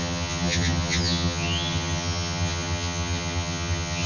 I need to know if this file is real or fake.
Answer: fake